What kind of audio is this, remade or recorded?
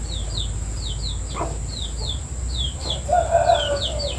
recorded